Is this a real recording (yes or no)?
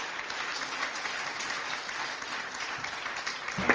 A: yes